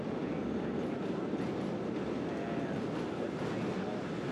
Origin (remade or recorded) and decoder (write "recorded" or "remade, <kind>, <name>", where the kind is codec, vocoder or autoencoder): recorded